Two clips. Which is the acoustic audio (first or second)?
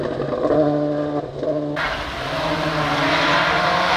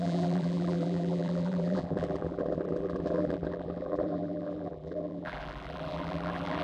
first